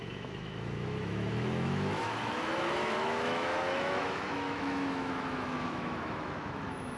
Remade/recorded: remade